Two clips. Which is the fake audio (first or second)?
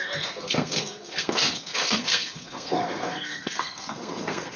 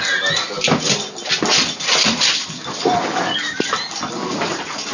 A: first